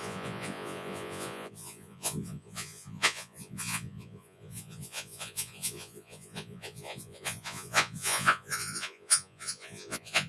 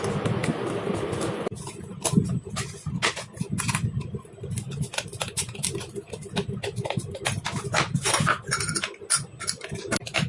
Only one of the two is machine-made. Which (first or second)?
first